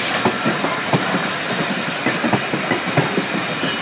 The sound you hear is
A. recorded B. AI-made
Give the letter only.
A